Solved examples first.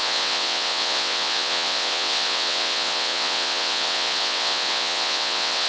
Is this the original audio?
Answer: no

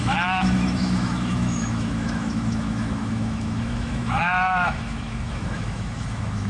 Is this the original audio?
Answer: no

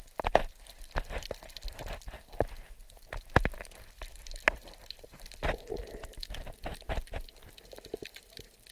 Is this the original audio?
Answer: yes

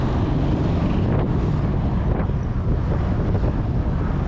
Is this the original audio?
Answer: yes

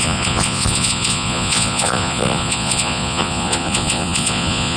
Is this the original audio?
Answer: no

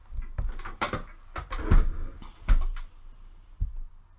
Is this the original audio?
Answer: yes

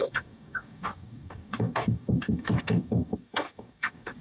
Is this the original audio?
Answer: no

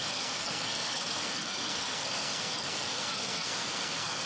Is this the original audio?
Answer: no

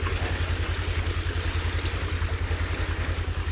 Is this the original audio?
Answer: yes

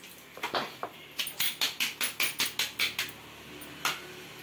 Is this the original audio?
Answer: yes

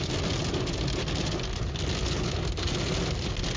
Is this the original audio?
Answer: yes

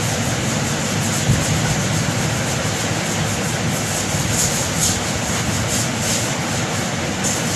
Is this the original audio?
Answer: yes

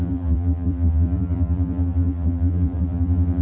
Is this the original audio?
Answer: no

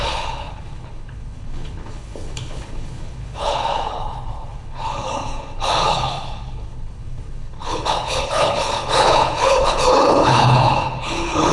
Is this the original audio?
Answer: no